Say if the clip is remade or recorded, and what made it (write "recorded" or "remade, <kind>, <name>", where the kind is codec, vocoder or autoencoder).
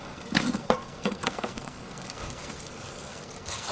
remade, codec, SNAC